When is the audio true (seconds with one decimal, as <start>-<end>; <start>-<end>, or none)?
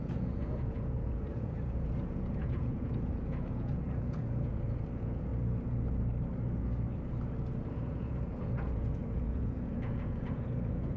5.3-7.7